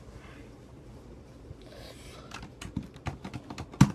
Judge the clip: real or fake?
real